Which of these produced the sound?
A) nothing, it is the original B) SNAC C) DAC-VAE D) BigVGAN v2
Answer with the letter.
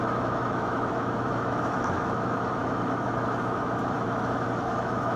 C